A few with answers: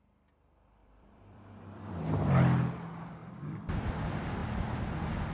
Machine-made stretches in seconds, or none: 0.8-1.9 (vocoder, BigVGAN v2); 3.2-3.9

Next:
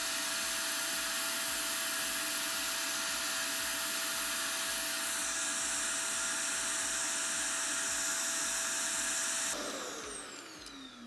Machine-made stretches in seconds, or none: none

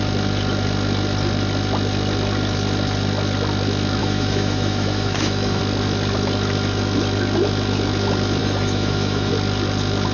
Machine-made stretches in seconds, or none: 4.0-5.6 (autoencoder, DAC-VAE); 8.4-9.3

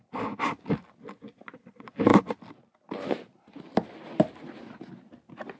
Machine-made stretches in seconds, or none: none